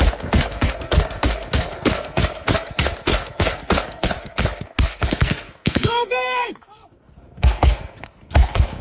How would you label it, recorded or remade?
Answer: remade